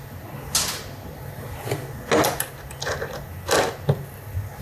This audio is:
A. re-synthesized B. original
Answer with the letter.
B